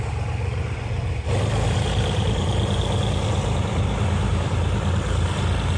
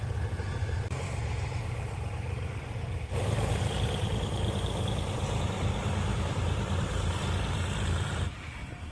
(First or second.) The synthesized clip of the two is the second